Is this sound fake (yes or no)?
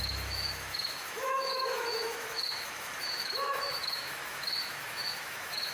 yes